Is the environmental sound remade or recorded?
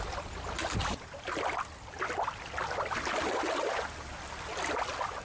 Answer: recorded